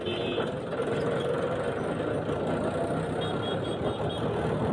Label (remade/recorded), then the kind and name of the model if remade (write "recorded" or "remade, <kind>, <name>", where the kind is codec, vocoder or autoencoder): recorded